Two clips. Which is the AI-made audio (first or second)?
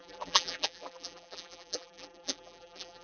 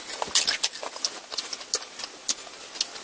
first